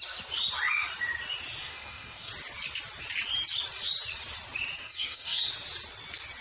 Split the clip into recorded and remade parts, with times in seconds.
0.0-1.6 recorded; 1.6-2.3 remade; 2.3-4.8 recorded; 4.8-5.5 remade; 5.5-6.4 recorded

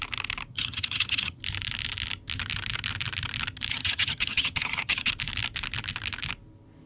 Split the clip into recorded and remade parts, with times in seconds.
0.0-0.5 recorded; 0.5-1.4 remade; 1.4-3.7 recorded; 3.7-5.1 remade; 5.1-6.9 recorded

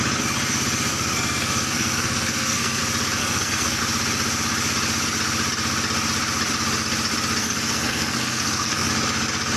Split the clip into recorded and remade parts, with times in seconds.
0.0-0.9 recorded; 0.9-2.8 remade; 2.8-3.2 recorded; 3.2-3.8 remade; 3.8-7.4 recorded; 7.4-8.9 remade; 8.9-9.6 recorded

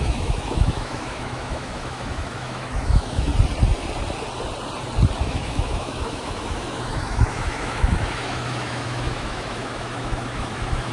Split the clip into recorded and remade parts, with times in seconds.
0.0-3.3 remade; 3.3-5.2 recorded; 5.2-10.9 remade

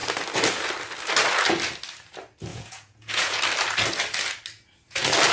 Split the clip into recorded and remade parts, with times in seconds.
0.0-2.5 recorded; 2.5-3.4 remade; 3.4-5.3 recorded

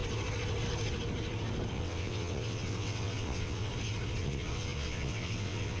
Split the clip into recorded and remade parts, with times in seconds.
0.0-1.7 recorded; 1.7-3.7 remade; 3.7-4.2 recorded; 4.2-5.8 remade

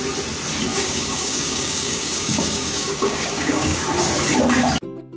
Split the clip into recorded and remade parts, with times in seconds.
0.0-0.7 recorded; 0.7-3.8 remade; 3.8-5.2 recorded